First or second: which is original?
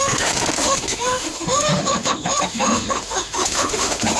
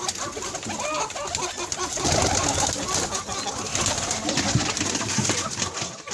second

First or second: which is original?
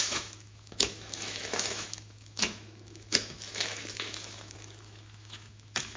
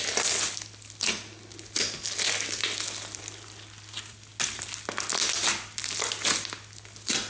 second